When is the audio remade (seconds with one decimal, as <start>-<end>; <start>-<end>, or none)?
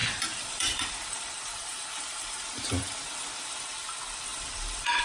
0.0-3.0; 4.3-5.0